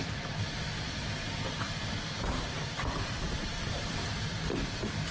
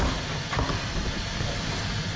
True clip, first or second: second